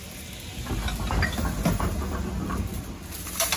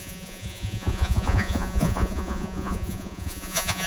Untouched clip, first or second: first